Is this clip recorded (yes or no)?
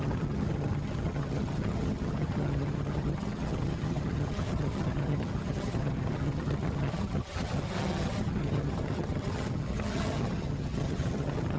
no